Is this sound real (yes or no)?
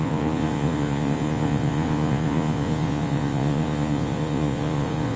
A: no